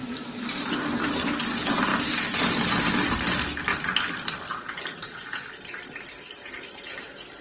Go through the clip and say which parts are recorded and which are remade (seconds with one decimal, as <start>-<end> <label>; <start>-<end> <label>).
0.0-1.3 remade; 1.3-7.4 recorded